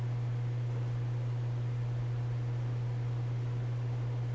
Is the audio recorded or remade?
recorded